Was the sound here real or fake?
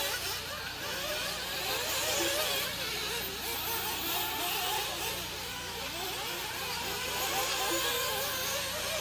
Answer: real